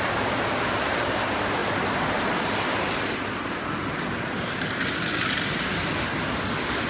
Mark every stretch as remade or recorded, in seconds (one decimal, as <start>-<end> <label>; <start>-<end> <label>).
0.0-6.9 recorded